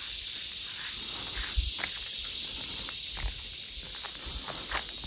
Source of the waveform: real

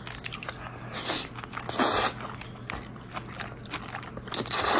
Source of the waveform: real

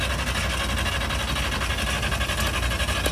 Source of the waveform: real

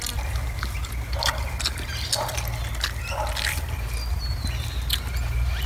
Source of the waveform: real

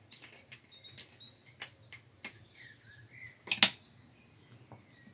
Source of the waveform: real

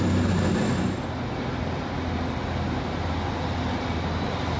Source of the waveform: real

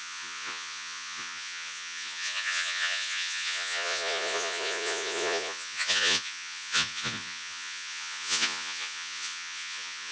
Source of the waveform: fake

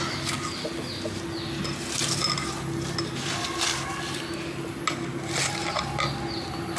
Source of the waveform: real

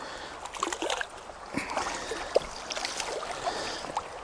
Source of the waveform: real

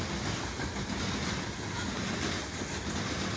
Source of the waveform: real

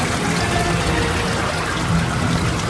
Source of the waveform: real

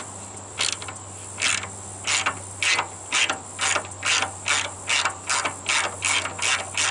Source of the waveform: real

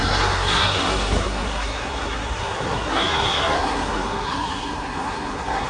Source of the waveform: fake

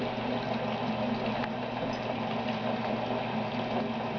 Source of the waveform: real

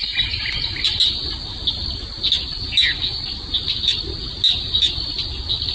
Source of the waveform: real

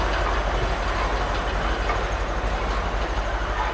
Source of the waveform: real